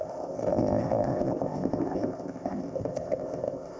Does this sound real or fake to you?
fake